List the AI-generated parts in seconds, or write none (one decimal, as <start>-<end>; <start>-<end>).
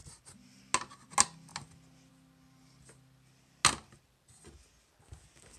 none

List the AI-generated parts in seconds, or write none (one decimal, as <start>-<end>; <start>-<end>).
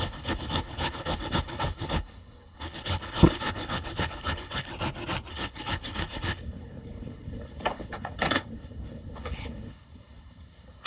0.0-4.7; 5.3-10.9